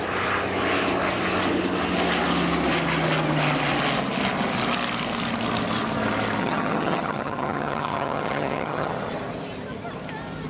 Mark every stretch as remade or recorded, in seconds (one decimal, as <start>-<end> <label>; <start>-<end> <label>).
0.0-6.4 recorded; 6.4-8.9 remade; 8.9-10.5 recorded